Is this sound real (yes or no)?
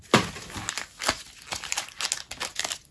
yes